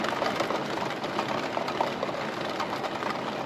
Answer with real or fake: real